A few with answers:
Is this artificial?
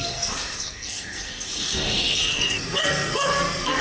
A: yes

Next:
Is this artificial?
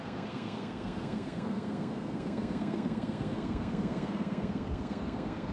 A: yes